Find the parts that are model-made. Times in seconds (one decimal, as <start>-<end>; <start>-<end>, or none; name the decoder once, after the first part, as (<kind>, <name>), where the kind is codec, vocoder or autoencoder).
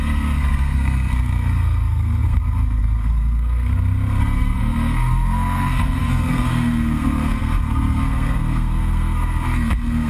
0.0-3.7 (codec, SNAC); 4.2-10.1